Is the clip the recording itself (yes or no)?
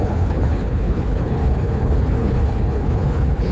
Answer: no